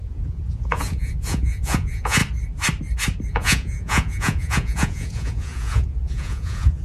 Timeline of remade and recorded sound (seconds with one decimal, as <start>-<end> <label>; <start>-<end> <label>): 0.0-2.2 remade; 2.2-3.3 recorded; 3.3-6.8 remade